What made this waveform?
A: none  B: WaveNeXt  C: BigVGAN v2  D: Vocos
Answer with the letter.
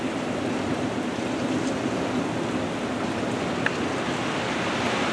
A